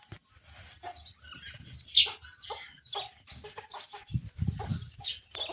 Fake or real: real